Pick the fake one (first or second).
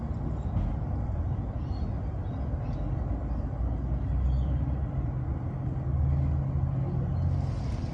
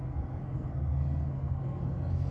second